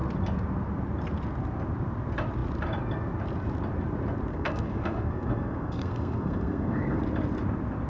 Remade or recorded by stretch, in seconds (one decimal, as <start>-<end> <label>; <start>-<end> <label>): 0.0-4.3 recorded; 4.3-7.0 remade; 7.0-7.9 recorded